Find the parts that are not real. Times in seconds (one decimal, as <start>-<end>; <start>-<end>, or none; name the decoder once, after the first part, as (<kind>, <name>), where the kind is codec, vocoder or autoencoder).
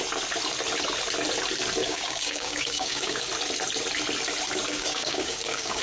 1.8-3.3 (codec, DAC); 4.7-5.8